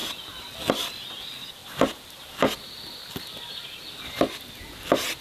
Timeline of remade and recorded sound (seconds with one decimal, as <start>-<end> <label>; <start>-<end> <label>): 0.0-5.2 recorded